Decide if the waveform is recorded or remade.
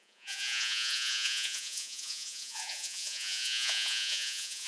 remade